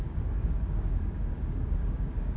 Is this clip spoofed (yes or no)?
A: yes